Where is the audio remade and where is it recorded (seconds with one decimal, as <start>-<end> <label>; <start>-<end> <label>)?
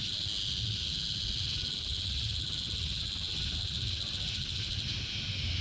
0.0-5.6 recorded